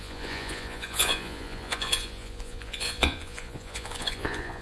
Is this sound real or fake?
fake